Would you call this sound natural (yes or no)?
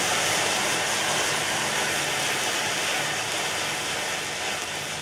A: yes